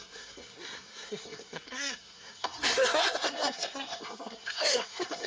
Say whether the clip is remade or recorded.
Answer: remade